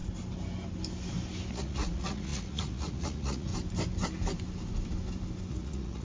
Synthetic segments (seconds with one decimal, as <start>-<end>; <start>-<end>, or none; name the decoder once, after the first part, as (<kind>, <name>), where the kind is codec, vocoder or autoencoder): 1.5-3.5 (vocoder, Vocos); 5.5-6.0